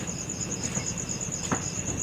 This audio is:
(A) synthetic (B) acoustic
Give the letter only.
B